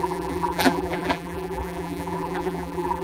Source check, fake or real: fake